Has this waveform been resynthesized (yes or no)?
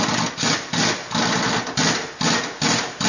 no